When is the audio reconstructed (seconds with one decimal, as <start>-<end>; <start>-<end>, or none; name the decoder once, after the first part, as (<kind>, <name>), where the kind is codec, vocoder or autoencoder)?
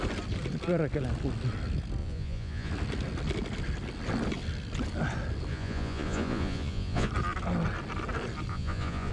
2.0-2.7 (vocoder, Vocos); 5.5-7.1; 8.5-9.1